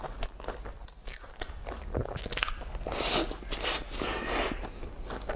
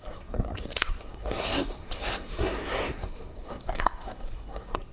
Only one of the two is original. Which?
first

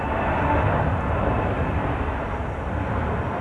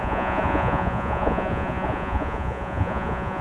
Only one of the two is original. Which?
first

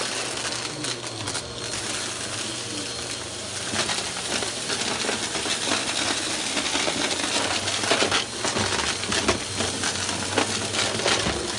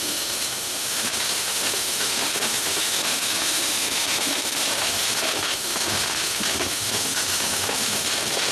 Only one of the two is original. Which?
first